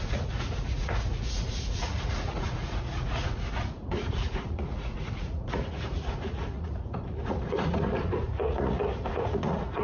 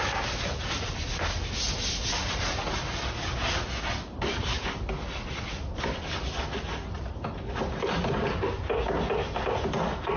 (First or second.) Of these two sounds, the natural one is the second